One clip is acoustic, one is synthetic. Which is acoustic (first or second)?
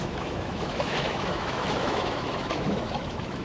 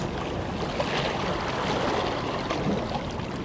second